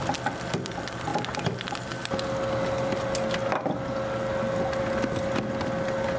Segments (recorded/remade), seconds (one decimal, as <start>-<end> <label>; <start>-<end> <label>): 0.0-6.2 recorded